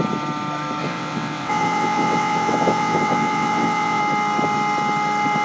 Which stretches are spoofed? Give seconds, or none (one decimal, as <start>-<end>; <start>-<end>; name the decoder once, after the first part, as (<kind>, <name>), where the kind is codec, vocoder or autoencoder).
0.8-4.0 (vocoder, WaveNeXt)

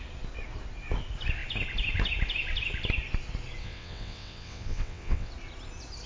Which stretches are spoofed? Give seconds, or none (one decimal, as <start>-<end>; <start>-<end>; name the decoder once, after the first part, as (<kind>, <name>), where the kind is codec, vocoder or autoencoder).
3.6-5.3 (vocoder, WaveNeXt)